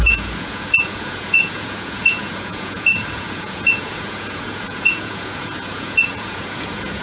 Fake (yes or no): yes